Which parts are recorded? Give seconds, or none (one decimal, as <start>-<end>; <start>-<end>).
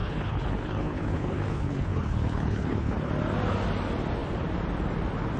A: 3.1-5.4